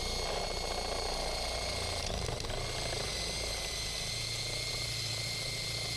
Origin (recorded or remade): recorded